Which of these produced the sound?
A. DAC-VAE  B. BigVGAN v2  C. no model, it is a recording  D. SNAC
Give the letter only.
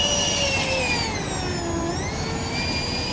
C